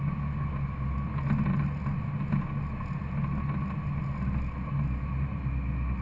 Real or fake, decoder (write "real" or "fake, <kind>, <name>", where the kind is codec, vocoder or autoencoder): real